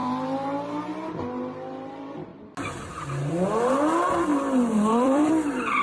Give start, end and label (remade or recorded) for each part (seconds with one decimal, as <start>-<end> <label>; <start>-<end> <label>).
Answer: 0.0-4.3 recorded; 4.3-5.3 remade; 5.3-5.8 recorded